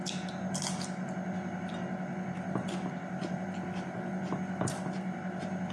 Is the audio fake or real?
real